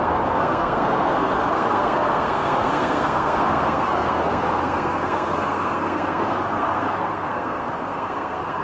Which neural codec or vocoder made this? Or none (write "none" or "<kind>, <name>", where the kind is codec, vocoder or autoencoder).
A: codec, SNAC